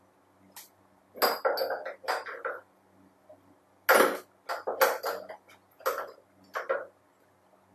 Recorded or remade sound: recorded